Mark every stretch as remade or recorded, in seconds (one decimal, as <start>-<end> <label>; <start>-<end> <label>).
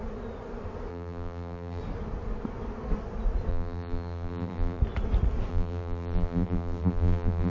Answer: 0.0-0.9 recorded; 0.9-1.8 remade; 1.8-3.5 recorded; 3.5-4.8 remade; 4.8-5.5 recorded; 5.5-7.5 remade